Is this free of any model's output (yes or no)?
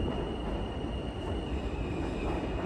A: yes